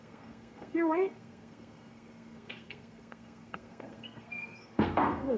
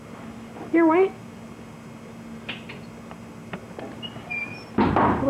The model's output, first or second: first